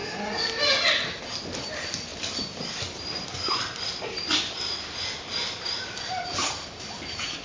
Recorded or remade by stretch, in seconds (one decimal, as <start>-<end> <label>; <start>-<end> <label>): 0.0-1.2 recorded; 1.2-7.4 remade